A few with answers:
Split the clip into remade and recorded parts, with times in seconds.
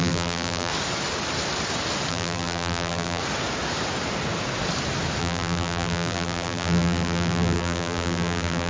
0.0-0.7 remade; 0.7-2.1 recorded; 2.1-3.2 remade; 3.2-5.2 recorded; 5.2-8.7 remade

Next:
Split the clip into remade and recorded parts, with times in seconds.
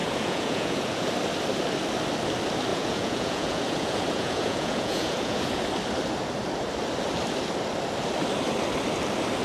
0.0-1.1 remade; 1.1-2.7 recorded; 2.7-5.6 remade; 5.6-9.4 recorded